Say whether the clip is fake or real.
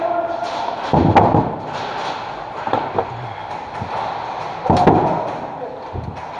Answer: real